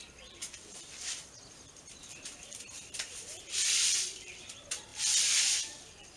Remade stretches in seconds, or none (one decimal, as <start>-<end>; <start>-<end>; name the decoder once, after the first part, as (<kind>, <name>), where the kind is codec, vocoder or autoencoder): 0.0-6.2 (vocoder, BigVGAN v2)